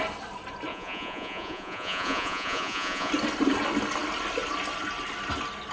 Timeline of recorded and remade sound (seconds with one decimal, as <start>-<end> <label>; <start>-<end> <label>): 0.0-0.7 recorded; 0.7-3.1 remade; 3.1-5.7 recorded